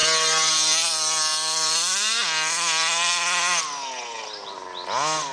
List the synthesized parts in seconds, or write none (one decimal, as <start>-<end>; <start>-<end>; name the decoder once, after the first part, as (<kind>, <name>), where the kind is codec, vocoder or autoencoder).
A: none